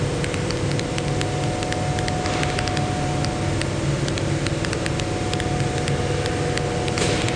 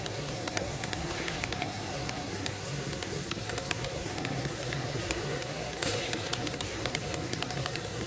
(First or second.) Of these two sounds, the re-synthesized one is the second